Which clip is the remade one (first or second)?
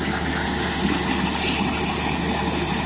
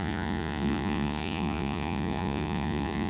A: second